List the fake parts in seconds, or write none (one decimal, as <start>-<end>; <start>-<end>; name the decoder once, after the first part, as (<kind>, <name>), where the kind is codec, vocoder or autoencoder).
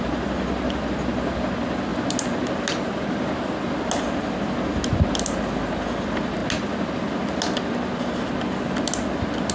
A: none